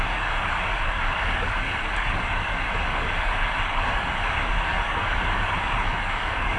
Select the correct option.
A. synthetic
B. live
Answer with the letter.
A